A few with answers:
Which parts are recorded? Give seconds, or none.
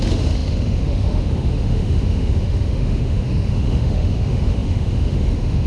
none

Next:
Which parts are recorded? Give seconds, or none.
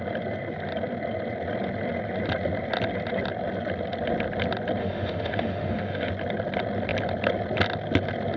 0.0-4.8; 6.1-8.4